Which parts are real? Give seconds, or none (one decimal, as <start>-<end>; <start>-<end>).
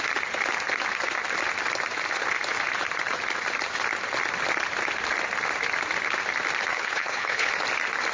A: 0.0-6.7; 7.5-8.1